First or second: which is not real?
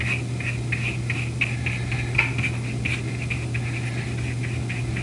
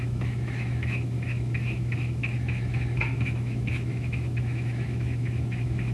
second